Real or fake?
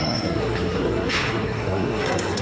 fake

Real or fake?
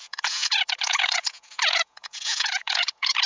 fake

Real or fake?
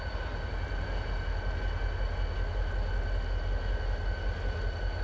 real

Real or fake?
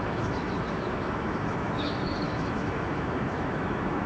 fake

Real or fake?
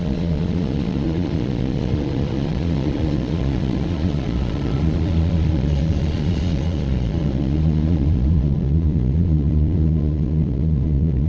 fake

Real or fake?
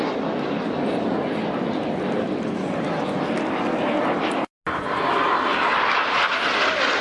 real